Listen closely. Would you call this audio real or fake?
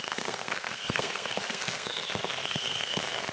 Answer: fake